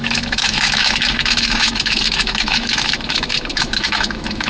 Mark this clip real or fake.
fake